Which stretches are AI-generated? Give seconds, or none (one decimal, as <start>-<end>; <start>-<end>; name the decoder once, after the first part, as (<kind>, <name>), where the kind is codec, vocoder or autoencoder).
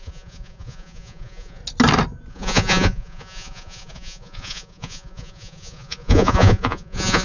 0.0-1.6 (vocoder, Vocos); 2.3-7.2